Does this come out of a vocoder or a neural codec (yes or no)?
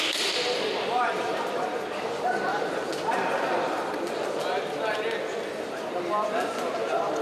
yes